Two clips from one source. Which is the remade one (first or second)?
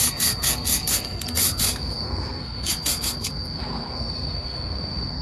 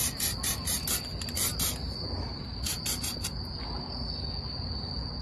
first